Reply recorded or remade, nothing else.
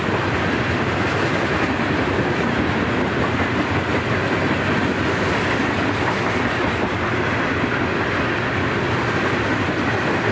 recorded